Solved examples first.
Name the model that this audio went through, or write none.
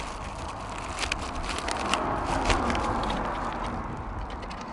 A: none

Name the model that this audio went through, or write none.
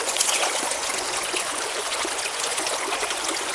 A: vocoder, Vocos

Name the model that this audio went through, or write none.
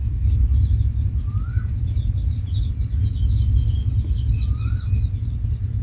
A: none